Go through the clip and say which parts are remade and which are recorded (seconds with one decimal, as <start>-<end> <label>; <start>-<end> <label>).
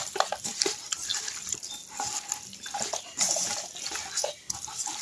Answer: 0.0-5.0 recorded